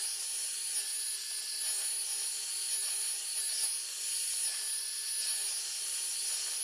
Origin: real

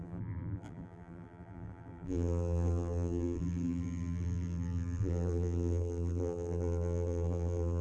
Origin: fake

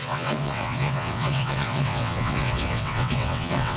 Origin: fake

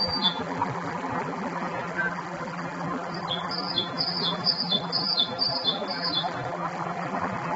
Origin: fake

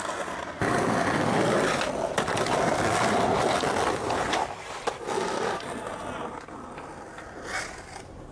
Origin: real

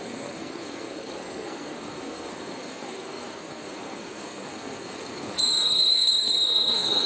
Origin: fake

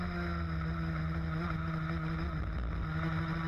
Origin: real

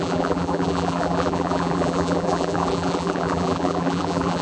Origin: fake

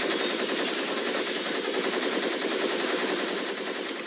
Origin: fake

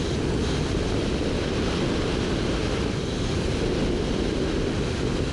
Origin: real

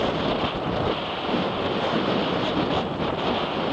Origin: real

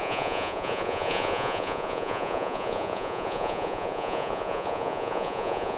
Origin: fake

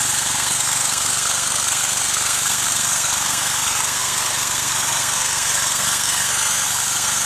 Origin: fake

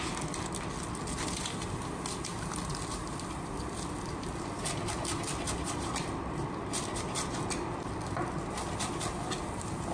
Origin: fake